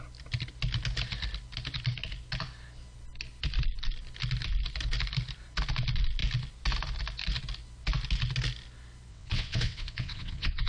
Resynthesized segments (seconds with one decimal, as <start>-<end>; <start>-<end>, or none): 9.1-10.7